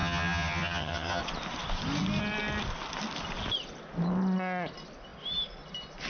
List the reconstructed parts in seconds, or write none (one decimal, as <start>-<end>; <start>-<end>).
0.0-1.2